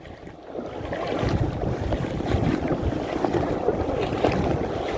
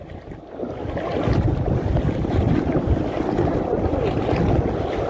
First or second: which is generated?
first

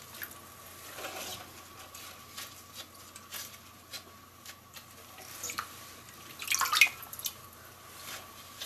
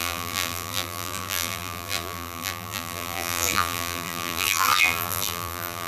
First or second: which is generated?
second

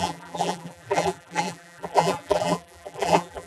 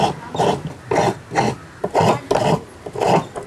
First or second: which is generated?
first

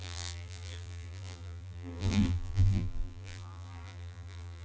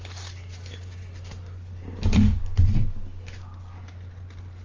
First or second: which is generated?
first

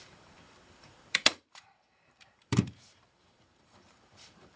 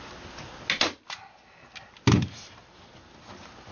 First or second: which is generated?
first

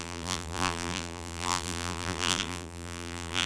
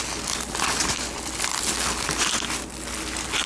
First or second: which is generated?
first